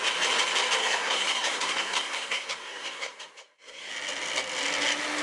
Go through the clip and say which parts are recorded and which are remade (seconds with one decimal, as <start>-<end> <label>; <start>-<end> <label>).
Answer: 0.0-0.8 recorded; 0.8-3.9 remade; 3.9-5.2 recorded